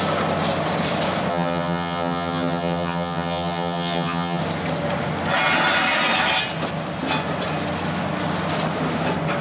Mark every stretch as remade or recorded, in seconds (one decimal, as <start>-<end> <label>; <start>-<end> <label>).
0.0-1.3 recorded; 1.3-4.4 remade; 4.4-9.4 recorded